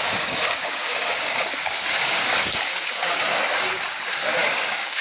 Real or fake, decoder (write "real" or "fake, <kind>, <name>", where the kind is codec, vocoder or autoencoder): fake, codec, DAC